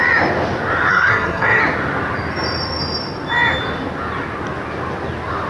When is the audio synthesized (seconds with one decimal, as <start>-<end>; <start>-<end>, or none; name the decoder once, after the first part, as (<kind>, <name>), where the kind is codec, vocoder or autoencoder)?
0.9-1.6 (codec, SNAC)